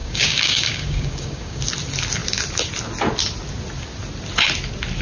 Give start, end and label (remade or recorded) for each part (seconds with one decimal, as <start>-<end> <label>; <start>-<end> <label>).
0.0-1.6 remade; 1.6-5.0 recorded

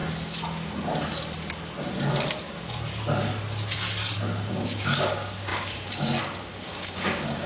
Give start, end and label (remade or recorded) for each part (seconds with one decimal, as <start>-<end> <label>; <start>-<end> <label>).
0.0-4.5 recorded; 4.5-7.5 remade

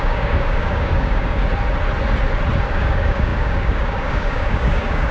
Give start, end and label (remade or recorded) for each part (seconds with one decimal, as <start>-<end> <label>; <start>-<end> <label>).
0.0-1.5 remade; 1.5-2.7 recorded; 2.7-5.1 remade

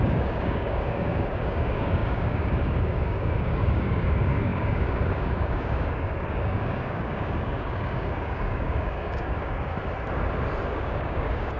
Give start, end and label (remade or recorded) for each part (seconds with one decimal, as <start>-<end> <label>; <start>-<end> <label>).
0.0-9.7 remade; 9.7-10.7 recorded; 10.7-11.6 remade

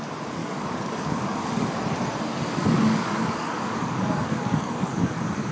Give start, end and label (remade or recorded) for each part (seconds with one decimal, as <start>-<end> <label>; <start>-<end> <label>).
0.0-0.4 recorded; 0.4-1.6 remade; 1.6-2.3 recorded; 2.3-5.5 remade

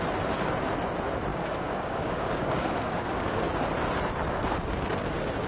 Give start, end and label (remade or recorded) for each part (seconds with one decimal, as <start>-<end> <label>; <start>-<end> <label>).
0.0-1.3 recorded; 1.3-3.4 remade; 3.4-5.5 recorded